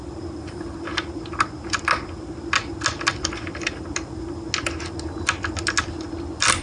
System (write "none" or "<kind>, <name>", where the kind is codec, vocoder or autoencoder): none